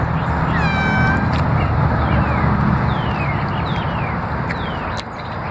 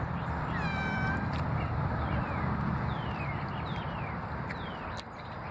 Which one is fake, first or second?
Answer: second